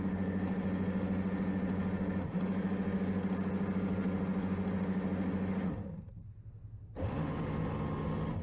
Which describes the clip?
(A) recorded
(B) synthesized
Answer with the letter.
A